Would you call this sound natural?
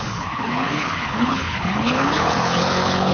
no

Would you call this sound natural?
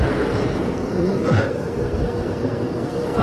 no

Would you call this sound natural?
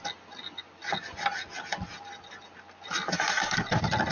yes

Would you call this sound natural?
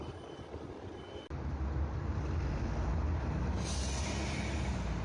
yes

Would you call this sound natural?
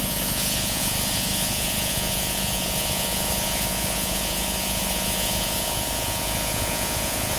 no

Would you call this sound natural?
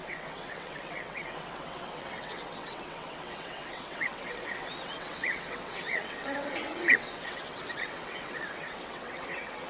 no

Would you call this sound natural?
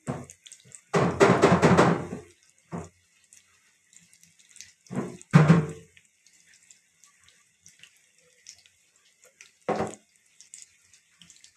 yes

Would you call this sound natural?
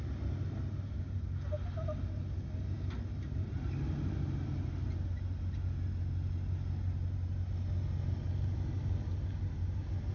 yes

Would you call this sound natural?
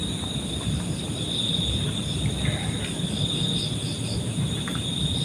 yes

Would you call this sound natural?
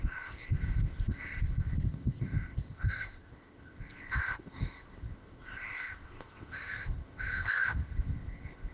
no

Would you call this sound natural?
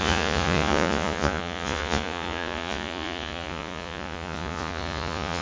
no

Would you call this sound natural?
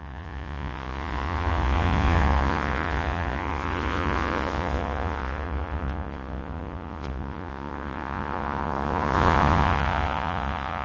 no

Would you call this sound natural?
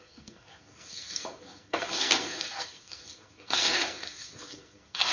no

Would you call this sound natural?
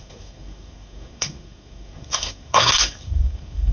no